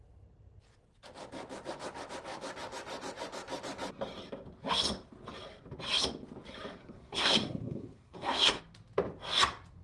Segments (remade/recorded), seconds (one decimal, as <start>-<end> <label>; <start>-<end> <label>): 0.0-6.8 recorded; 6.8-8.6 remade; 8.6-9.8 recorded

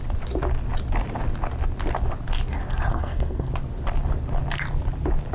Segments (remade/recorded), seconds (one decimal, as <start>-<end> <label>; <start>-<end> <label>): 0.0-2.9 recorded; 2.9-3.5 remade; 3.5-5.3 recorded

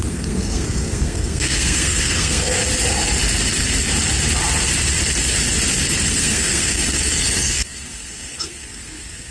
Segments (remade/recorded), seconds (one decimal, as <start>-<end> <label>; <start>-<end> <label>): 0.0-2.6 remade; 2.6-6.1 recorded; 6.1-9.3 remade

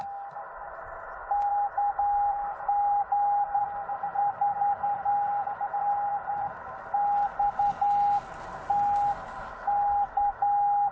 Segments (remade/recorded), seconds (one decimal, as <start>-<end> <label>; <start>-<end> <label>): 0.0-10.9 recorded

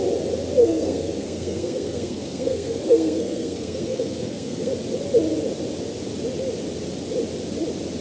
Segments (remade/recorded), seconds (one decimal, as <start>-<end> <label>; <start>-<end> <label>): 0.0-0.6 recorded; 0.6-4.7 remade; 4.7-8.0 recorded

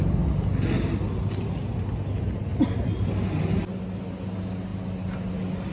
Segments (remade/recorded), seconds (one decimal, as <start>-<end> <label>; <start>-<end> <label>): 0.0-5.7 recorded